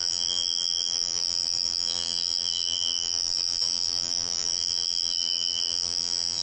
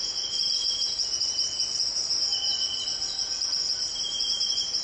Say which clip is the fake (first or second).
first